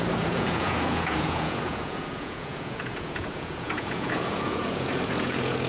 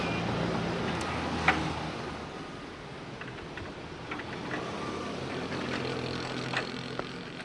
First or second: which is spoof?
first